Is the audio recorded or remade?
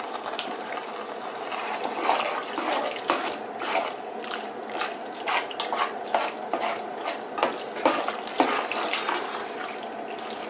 recorded